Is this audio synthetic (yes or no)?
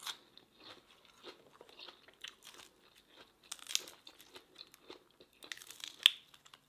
no